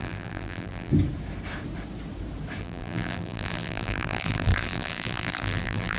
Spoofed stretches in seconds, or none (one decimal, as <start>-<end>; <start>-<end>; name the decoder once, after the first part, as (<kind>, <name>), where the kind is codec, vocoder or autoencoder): 0.0-0.9 (vocoder, BigVGAN v2); 2.6-6.0

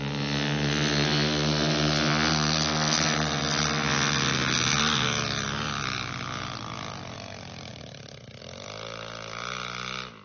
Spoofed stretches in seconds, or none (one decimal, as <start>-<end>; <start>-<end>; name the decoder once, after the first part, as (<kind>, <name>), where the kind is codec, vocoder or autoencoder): none

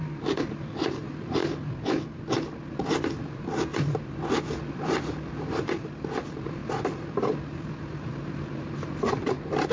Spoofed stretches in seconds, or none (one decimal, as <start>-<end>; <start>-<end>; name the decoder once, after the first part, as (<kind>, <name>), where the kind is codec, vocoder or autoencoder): 0.0-1.4 (vocoder, BigVGAN v2); 3.2-3.7; 4.7-9.7

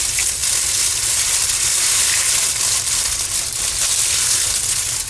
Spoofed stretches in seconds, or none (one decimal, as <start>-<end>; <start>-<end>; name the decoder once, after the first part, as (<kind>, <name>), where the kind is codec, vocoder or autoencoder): none

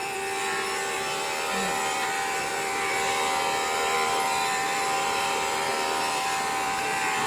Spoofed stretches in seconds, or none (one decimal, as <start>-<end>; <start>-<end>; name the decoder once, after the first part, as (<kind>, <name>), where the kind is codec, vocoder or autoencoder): 0.0-7.3 (vocoder, BigVGAN v2)

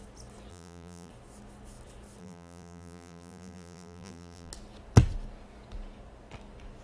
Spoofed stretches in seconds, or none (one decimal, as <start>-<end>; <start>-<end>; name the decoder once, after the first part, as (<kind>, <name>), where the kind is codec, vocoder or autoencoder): 0.5-1.1 (vocoder, BigVGAN v2); 2.2-4.5

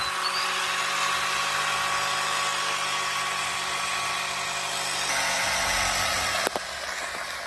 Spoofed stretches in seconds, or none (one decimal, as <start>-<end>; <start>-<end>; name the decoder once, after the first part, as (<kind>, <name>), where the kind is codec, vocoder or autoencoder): none

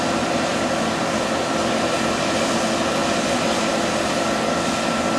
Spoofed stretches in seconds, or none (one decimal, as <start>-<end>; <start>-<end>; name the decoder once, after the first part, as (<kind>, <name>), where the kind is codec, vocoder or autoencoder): 3.0-3.9 (vocoder, BigVGAN v2)